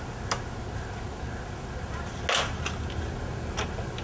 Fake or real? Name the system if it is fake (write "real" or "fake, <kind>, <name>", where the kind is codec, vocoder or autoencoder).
real